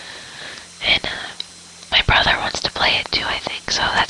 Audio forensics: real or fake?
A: real